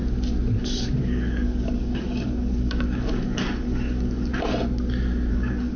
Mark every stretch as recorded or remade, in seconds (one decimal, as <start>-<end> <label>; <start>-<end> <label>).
0.0-0.6 recorded; 0.6-4.3 remade; 4.3-5.3 recorded; 5.3-5.8 remade